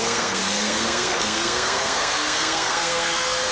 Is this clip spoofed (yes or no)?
yes